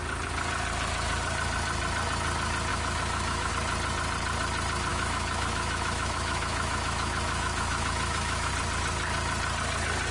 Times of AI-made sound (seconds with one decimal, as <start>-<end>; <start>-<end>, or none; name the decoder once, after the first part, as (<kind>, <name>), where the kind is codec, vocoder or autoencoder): 2.7-3.5 (autoencoder, DAC-VAE); 4.9-8.5